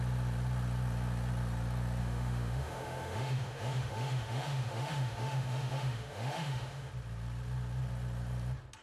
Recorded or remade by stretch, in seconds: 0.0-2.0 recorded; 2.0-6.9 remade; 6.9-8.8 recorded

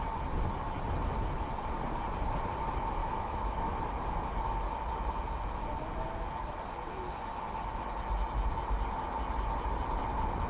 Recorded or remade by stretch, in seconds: 0.0-3.0 recorded; 3.0-3.8 remade; 3.8-10.5 recorded